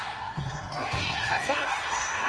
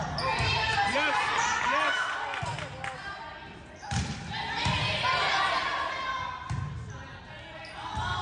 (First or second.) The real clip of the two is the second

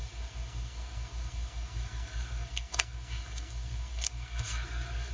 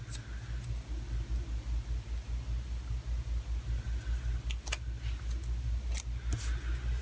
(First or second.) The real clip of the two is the second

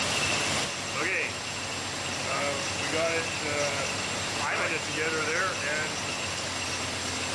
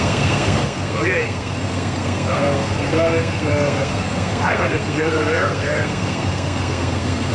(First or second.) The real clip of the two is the first